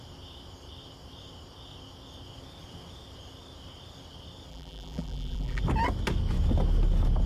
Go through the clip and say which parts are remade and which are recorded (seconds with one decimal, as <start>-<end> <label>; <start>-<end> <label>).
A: 0.0-4.5 recorded; 4.5-5.6 remade; 5.6-7.3 recorded